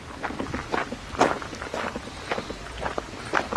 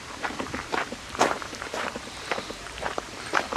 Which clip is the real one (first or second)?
first